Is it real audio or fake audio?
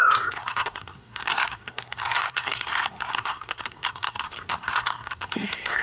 fake